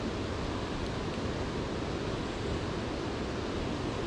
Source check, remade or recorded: recorded